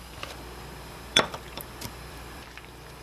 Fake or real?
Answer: fake